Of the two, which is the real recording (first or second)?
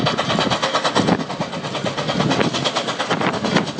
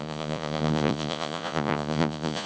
first